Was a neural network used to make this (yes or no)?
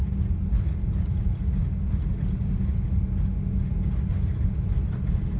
no